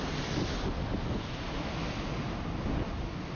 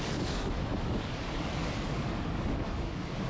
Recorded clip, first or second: first